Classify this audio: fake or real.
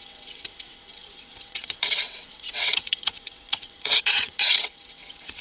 fake